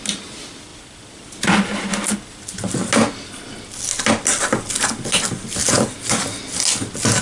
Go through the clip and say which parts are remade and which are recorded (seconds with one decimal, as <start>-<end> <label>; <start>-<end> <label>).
0.0-7.2 recorded